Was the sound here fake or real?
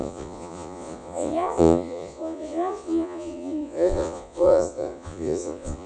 fake